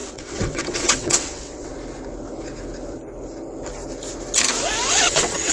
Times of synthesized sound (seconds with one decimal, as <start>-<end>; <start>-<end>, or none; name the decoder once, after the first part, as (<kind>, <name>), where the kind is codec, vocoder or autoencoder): 0.0-1.7 (vocoder, WaveNeXt); 4.9-5.5